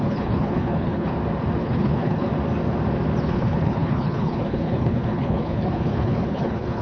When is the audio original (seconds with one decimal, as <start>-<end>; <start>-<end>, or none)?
1.1-1.6; 2.3-3.2